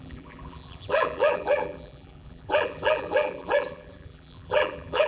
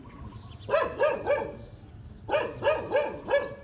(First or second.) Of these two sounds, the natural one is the second